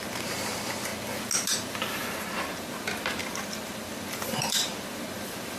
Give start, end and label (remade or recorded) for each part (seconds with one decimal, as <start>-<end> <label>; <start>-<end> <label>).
0.0-0.9 remade; 0.9-1.5 recorded; 1.5-5.6 remade